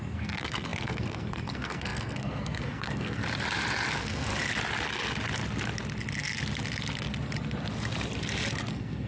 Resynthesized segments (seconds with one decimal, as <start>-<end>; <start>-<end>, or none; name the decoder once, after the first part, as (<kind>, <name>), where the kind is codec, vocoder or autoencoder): 0.0-3.2 (codec, SNAC); 3.9-4.3; 8.7-9.1